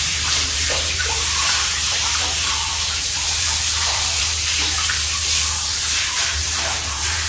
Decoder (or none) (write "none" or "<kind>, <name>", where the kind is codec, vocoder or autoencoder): vocoder, BigVGAN v2